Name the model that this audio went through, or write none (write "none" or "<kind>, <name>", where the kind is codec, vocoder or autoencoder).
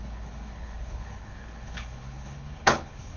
codec, HILCodec